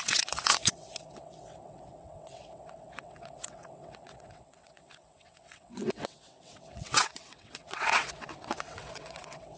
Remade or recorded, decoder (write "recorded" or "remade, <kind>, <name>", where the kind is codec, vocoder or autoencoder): remade, vocoder, WaveNeXt